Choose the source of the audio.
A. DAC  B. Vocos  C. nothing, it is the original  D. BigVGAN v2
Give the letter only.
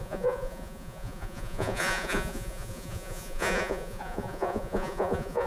B